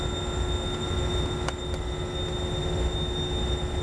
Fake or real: real